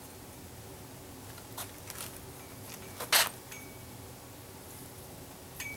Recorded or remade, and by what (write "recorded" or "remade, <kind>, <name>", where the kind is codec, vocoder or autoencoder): recorded